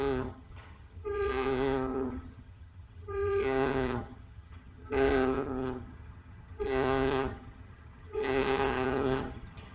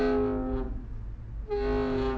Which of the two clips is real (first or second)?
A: second